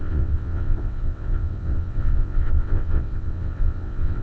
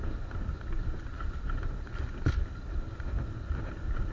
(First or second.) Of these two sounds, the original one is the second